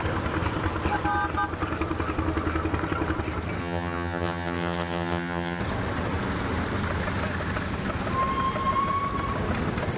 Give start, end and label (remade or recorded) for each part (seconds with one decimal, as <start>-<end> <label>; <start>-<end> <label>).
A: 0.0-3.6 recorded; 3.6-5.6 remade; 5.6-10.0 recorded